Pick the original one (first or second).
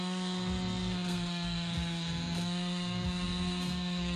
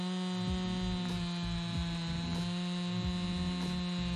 second